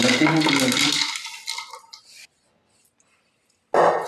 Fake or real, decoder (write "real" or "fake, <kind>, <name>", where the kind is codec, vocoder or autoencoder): real